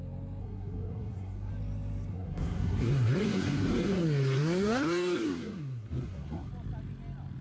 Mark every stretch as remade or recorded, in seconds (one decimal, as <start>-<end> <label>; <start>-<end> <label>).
0.0-0.4 recorded; 0.4-1.5 remade; 1.5-2.1 recorded; 2.1-6.5 remade; 6.5-7.4 recorded